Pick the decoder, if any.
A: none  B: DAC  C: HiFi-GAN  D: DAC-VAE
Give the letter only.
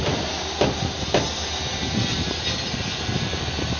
A